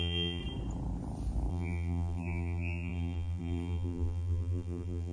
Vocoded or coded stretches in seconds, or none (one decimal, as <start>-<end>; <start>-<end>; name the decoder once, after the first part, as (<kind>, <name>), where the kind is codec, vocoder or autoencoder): 0.0-0.4 (vocoder, BigVGAN v2); 1.5-5.1